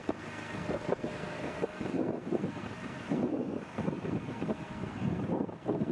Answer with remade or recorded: remade